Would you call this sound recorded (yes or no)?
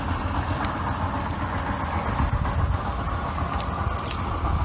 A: yes